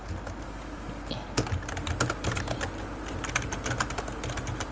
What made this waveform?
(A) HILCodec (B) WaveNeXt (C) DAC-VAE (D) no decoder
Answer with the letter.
D